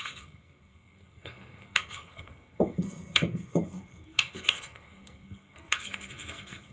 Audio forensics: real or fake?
fake